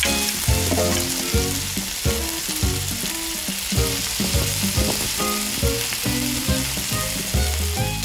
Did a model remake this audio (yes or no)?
no